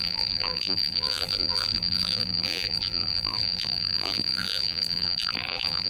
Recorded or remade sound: remade